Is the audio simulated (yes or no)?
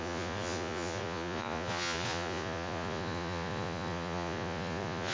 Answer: yes